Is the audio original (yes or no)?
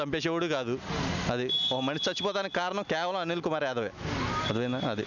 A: yes